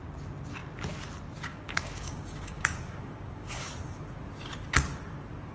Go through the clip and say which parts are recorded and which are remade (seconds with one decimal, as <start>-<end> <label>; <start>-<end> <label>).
0.0-1.5 recorded; 1.5-3.7 remade; 3.7-5.5 recorded